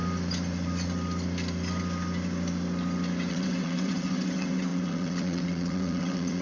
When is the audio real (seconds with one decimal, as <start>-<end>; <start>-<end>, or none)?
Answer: 0.0-3.3